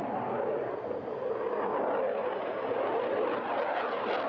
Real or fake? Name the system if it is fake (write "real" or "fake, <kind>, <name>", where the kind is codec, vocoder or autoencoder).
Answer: real